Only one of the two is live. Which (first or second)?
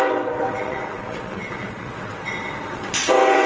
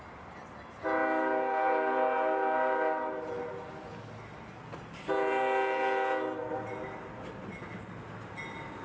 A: second